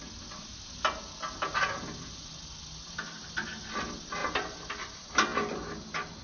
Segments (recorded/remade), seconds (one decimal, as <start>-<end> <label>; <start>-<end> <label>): 0.0-6.2 recorded